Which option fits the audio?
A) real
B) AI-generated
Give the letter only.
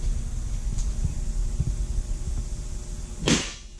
A